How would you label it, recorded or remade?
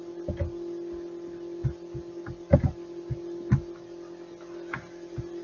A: recorded